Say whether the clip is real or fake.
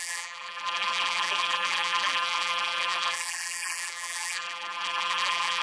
fake